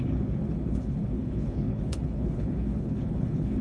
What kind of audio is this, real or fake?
fake